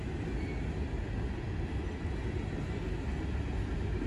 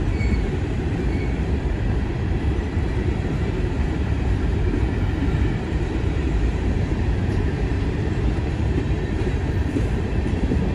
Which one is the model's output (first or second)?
second